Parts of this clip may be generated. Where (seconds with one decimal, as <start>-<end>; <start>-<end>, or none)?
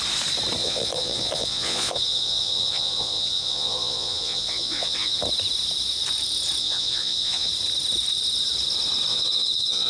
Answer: 0.6-5.2; 6.6-7.5; 9.1-9.9